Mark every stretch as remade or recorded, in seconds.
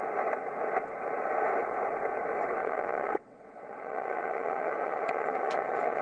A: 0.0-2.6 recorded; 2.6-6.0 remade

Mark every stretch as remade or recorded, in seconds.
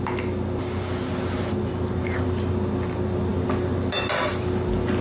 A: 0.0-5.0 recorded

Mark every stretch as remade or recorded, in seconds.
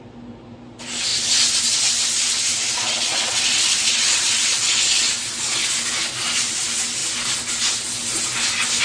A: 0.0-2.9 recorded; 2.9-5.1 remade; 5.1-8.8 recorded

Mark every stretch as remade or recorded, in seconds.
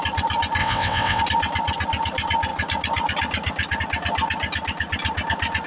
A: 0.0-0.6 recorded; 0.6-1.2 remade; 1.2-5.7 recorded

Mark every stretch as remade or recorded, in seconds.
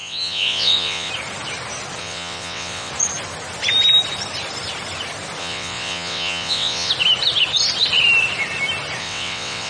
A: 0.0-1.1 remade; 1.1-2.0 recorded; 2.0-2.9 remade; 2.9-5.4 recorded; 5.4-6.9 remade; 6.9-9.0 recorded; 9.0-9.7 remade